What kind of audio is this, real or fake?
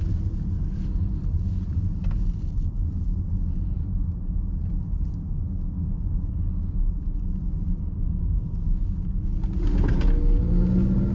real